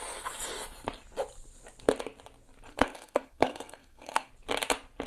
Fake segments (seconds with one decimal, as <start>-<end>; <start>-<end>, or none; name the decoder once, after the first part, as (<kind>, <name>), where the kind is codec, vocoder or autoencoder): 2.7-4.3 (codec, SNAC)